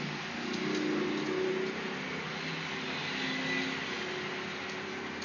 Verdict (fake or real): real